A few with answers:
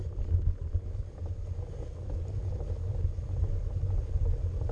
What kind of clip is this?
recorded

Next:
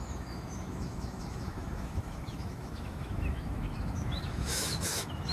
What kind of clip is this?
remade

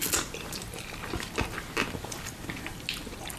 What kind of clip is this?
recorded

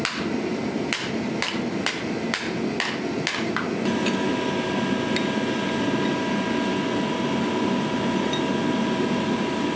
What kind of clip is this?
recorded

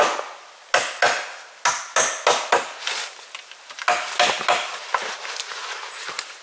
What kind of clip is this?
recorded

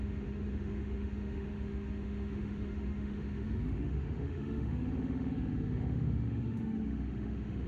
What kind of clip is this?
remade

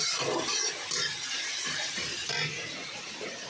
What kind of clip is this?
recorded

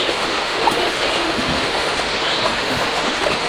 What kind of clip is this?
remade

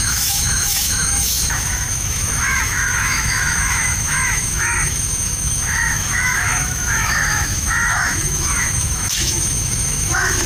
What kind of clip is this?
remade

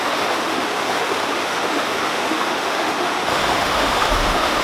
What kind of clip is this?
remade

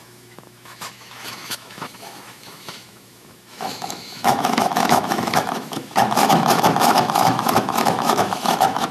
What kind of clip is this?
remade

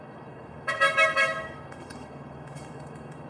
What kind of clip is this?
remade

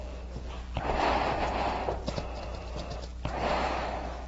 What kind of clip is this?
recorded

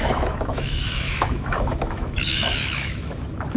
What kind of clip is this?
remade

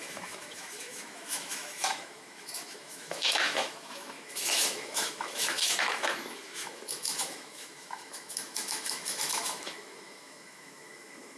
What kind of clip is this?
remade